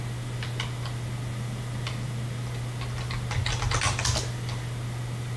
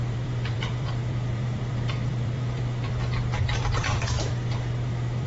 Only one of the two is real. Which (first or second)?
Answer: first